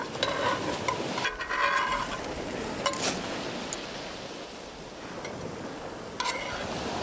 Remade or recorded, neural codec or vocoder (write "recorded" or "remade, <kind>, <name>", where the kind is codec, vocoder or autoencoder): recorded